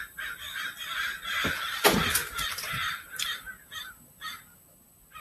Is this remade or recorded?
recorded